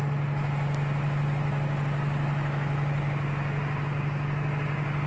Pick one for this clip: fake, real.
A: real